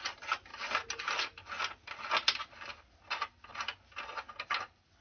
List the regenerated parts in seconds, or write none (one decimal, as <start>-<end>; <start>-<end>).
none